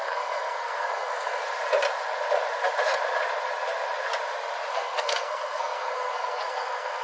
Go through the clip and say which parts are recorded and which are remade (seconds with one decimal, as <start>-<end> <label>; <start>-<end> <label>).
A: 0.0-1.4 remade; 1.4-4.7 recorded; 4.7-7.0 remade